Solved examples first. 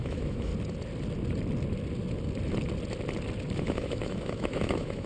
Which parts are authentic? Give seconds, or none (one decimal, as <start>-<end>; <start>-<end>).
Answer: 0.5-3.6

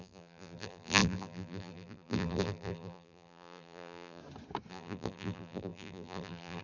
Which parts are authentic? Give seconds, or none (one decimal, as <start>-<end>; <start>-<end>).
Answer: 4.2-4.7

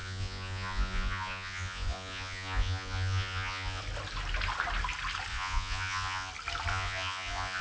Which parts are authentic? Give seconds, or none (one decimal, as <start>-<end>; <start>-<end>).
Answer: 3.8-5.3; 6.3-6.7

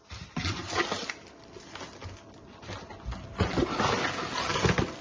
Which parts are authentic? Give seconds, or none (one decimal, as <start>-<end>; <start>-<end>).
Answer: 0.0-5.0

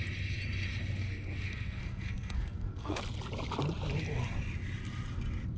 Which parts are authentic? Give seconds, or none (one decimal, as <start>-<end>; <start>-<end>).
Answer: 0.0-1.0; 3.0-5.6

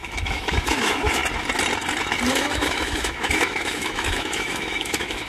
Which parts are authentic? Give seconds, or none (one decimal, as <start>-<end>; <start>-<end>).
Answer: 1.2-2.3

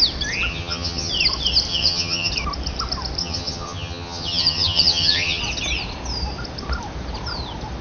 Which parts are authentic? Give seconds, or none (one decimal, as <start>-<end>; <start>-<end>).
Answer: 0.0-0.5; 1.1-1.7; 2.3-3.2; 5.4-7.8

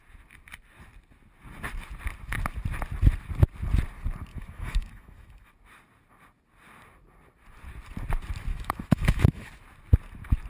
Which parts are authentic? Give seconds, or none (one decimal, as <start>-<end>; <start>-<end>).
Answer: 0.0-4.3; 5.5-8.5; 9.5-10.5